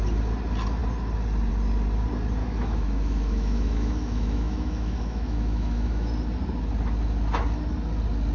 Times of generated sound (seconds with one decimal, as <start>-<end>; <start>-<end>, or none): 2.4-6.1